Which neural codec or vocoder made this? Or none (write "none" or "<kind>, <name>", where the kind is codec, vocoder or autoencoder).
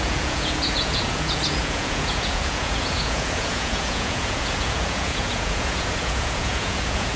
vocoder, Vocos